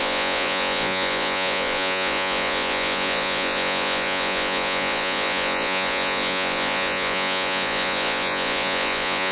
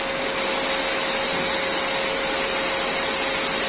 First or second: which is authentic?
second